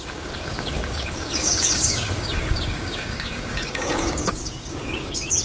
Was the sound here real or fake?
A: fake